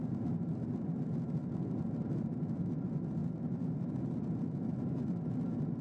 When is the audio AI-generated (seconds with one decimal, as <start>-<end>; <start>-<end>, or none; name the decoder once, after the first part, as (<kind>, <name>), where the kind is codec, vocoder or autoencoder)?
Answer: none